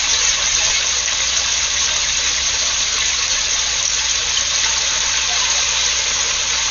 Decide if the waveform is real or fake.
fake